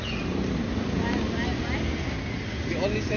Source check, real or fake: real